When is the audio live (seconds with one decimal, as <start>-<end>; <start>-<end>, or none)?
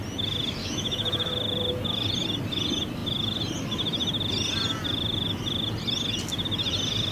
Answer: 0.0-0.6; 1.3-7.1